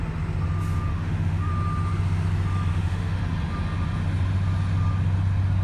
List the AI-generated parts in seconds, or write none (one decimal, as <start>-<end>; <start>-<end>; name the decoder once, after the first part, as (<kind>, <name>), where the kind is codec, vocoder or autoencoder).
0.9-1.5 (autoencoder, DAC-VAE); 2.7-3.2